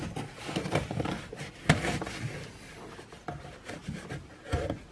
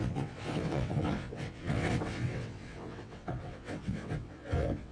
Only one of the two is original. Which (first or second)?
first